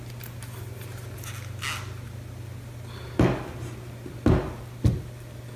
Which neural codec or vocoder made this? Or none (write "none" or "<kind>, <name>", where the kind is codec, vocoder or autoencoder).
none